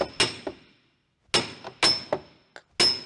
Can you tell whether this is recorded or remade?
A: recorded